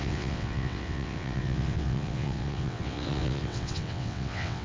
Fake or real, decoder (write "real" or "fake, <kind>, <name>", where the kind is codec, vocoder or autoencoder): fake, vocoder, WaveNeXt